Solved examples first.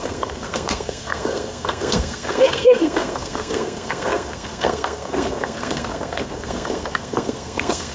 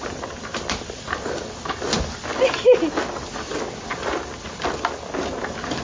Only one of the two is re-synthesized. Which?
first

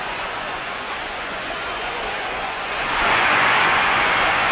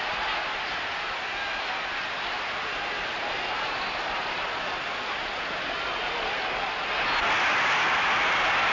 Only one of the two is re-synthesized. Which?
first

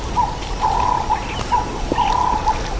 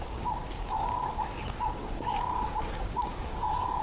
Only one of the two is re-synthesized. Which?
second